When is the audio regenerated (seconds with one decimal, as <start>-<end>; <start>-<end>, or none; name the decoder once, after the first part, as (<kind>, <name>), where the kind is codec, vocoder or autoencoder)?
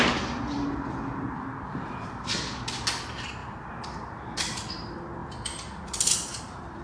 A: none